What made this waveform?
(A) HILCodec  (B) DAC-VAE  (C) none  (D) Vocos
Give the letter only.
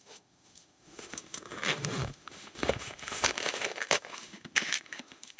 B